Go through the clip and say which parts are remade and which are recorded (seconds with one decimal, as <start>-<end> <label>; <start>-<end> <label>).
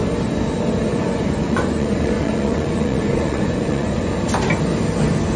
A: 0.0-0.9 recorded; 0.9-4.1 remade; 4.1-5.4 recorded